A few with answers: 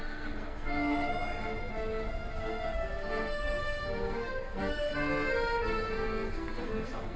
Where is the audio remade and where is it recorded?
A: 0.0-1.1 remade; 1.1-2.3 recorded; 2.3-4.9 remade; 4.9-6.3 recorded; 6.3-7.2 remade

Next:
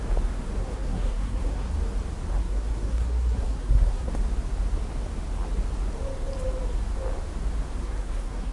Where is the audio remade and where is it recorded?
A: 0.0-0.6 recorded; 0.6-1.7 remade; 1.7-2.4 recorded; 2.4-4.1 remade; 4.1-7.8 recorded; 7.8-8.5 remade

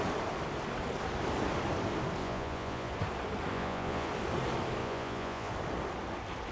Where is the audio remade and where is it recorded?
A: 0.0-2.2 recorded; 2.2-2.9 remade; 2.9-3.5 recorded; 3.5-4.1 remade; 4.1-4.8 recorded; 4.8-5.5 remade; 5.5-6.5 recorded

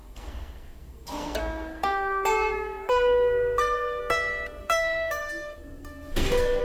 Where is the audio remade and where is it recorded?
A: 0.0-4.0 remade; 4.0-4.6 recorded; 4.6-6.6 remade